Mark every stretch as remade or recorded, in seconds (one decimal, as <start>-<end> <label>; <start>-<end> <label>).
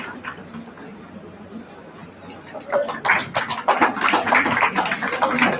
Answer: 0.0-5.6 recorded